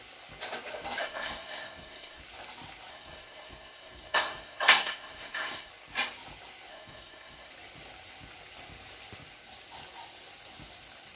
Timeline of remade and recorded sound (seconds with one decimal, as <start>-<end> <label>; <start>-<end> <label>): 0.0-1.0 recorded; 1.0-2.2 remade; 2.2-2.9 recorded; 2.9-5.7 remade; 5.7-6.7 recorded; 6.7-7.5 remade; 7.5-11.2 recorded